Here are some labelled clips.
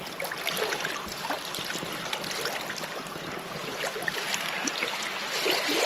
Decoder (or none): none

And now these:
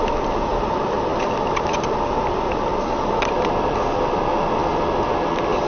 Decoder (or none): none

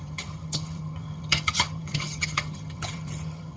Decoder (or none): vocoder, HiFi-GAN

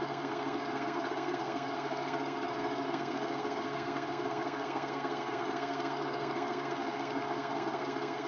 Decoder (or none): codec, SNAC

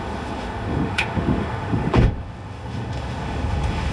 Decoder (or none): autoencoder, DAC-VAE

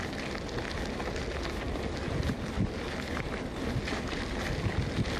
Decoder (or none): none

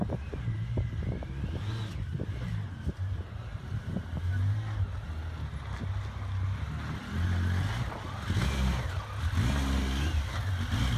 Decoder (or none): none